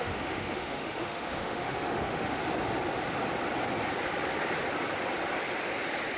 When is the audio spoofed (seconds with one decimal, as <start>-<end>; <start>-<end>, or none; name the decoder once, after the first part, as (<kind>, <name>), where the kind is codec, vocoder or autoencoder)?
0.0-2.4 (autoencoder, DAC-VAE)